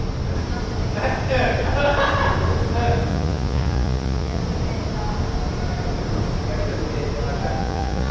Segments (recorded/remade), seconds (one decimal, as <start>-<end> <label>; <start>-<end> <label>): 0.0-3.1 recorded; 3.1-4.4 remade; 4.4-7.6 recorded; 7.6-8.1 remade